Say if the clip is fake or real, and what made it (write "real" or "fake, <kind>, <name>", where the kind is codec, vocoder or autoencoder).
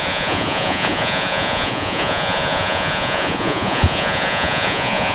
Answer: fake, vocoder, Vocos